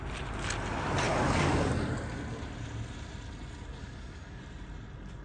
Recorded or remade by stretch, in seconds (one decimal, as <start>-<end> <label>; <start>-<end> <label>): 0.0-1.1 recorded; 1.1-1.7 remade; 1.7-3.8 recorded; 3.8-4.4 remade; 4.4-5.2 recorded